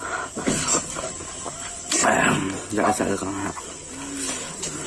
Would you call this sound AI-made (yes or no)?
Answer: no